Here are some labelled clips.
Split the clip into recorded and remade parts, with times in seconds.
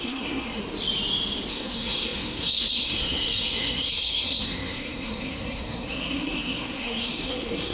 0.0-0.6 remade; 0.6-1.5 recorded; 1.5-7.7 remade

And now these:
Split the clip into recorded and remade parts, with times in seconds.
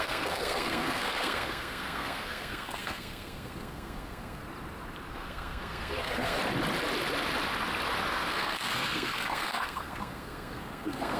0.0-4.4 remade; 4.4-5.1 recorded; 5.1-6.4 remade; 6.4-8.1 recorded; 8.1-11.2 remade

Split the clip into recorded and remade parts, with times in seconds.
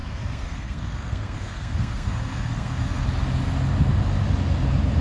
0.0-3.0 remade; 3.0-5.0 recorded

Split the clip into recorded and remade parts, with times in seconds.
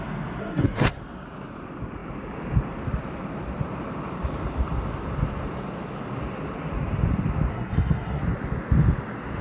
0.0-0.4 recorded; 0.4-1.0 remade; 1.0-7.5 recorded; 7.5-8.2 remade; 8.2-9.4 recorded